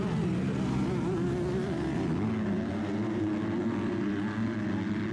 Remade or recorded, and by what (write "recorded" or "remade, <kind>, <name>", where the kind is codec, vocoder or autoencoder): recorded